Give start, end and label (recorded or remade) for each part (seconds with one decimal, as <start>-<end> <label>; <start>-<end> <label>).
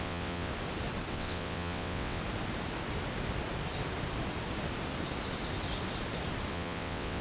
0.0-0.5 remade; 0.5-1.1 recorded; 1.1-2.2 remade; 2.2-6.5 recorded; 6.5-7.2 remade